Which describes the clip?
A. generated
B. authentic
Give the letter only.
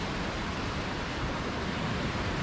A